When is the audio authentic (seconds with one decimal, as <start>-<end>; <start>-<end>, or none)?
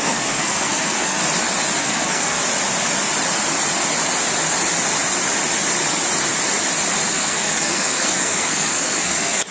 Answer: 1.2-1.8; 2.4-7.1